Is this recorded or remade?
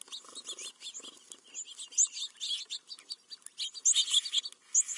recorded